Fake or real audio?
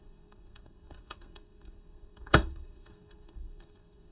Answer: fake